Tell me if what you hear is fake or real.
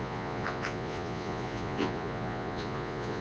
fake